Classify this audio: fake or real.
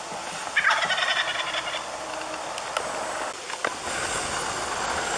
real